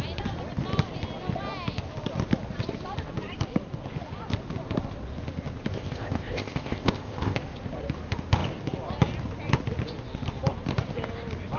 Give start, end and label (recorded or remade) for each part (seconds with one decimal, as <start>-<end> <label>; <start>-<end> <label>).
0.0-5.7 recorded; 5.7-7.4 remade; 7.4-11.6 recorded